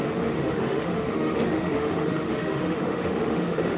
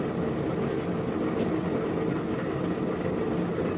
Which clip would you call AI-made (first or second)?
first